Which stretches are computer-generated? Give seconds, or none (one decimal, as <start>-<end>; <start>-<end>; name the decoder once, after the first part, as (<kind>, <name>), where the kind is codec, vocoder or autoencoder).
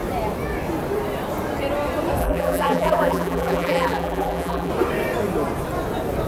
2.2-4.7 (vocoder, BigVGAN v2)